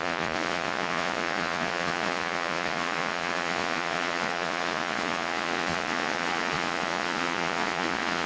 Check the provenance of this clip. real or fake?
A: fake